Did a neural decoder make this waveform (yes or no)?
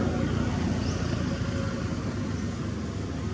no